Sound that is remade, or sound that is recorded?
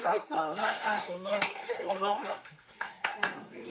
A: remade